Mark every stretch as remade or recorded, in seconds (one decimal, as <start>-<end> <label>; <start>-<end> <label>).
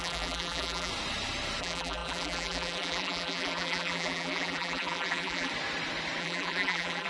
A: 0.0-0.9 remade; 0.9-1.6 recorded; 1.6-5.5 remade; 5.5-6.2 recorded; 6.2-7.1 remade